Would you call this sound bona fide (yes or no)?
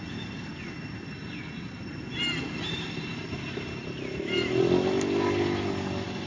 yes